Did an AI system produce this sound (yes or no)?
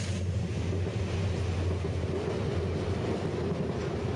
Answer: no